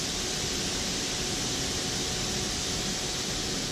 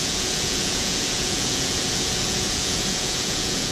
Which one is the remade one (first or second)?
second